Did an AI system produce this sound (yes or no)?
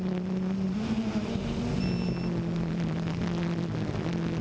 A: no